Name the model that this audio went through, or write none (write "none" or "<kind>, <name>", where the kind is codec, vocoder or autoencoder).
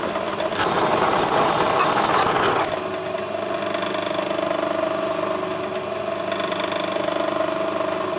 none